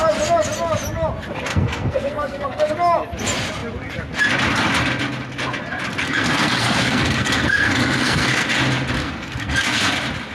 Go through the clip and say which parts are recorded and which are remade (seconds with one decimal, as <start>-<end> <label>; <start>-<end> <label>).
0.0-1.5 recorded; 1.5-2.7 remade; 2.7-6.0 recorded; 6.0-8.5 remade; 8.5-9.0 recorded; 9.0-9.9 remade; 9.9-10.3 recorded